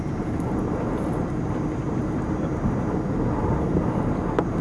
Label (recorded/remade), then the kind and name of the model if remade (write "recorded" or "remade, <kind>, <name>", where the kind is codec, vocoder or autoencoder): recorded